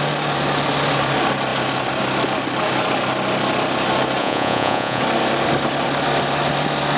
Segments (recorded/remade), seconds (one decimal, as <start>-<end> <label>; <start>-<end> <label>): 0.0-4.2 recorded; 4.2-5.0 remade; 5.0-7.0 recorded